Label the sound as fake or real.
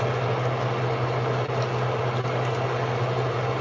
real